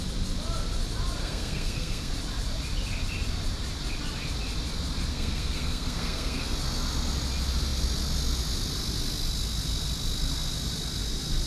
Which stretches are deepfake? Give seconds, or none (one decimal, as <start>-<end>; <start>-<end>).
1.2-2.1; 5.1-6.4